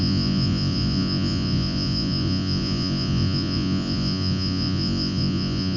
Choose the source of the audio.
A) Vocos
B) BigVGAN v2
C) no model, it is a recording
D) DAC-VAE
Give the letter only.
A